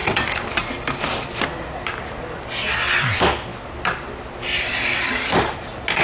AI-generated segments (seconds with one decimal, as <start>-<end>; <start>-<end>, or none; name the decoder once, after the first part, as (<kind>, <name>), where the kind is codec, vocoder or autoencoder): none